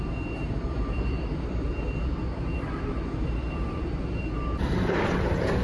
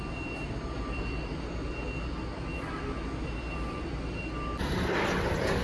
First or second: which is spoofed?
first